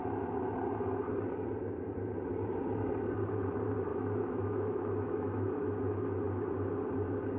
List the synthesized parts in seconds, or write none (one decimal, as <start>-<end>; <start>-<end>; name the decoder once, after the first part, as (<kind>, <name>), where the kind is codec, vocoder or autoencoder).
3.9-6.5 (autoencoder, DAC-VAE)